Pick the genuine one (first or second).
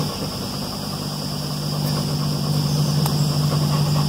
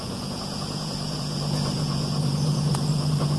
first